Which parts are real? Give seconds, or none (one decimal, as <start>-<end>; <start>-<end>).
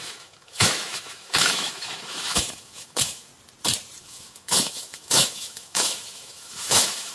3.3-4.0